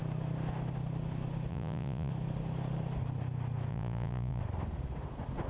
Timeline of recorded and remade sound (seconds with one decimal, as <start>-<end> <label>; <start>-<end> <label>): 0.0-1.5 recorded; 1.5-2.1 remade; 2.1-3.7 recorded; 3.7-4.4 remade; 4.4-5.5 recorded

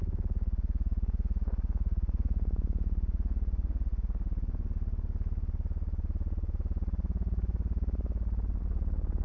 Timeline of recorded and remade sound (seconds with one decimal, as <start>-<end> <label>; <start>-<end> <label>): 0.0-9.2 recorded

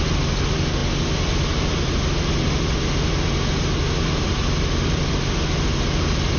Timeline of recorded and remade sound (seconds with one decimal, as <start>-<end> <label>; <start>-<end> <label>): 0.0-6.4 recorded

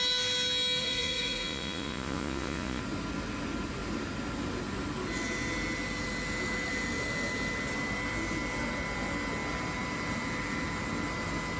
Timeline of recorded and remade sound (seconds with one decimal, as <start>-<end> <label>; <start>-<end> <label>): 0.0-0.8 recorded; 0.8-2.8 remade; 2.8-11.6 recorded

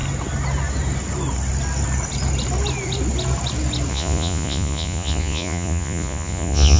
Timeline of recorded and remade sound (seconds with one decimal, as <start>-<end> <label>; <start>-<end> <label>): 0.0-3.9 recorded; 3.9-6.8 remade

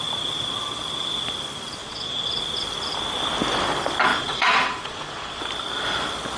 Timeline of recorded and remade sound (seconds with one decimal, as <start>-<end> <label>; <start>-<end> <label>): 0.0-1.8 recorded; 1.8-2.4 remade; 2.4-4.1 recorded; 4.1-5.4 remade; 5.4-6.4 recorded

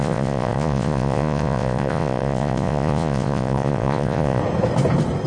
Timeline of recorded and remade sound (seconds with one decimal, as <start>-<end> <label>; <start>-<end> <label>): 0.0-4.4 remade; 4.4-5.3 recorded